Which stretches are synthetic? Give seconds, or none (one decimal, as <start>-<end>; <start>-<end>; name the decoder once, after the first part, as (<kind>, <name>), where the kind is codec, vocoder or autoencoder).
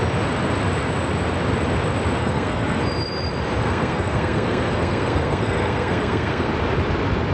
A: 2.2-2.8 (codec, SNAC); 3.6-6.5